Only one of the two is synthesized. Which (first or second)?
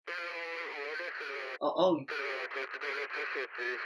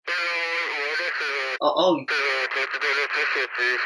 first